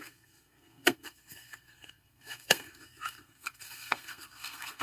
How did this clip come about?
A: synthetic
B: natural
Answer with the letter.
A